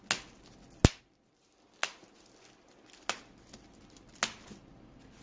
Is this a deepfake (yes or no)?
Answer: no